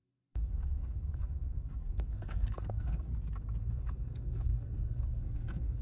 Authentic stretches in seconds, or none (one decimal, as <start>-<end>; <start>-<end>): 3.1-3.6